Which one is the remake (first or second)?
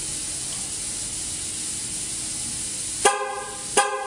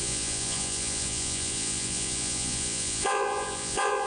second